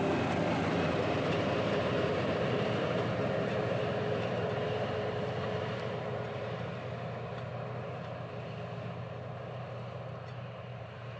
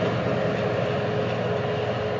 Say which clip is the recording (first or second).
second